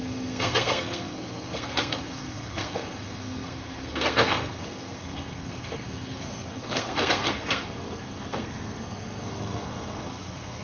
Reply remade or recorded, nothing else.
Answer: remade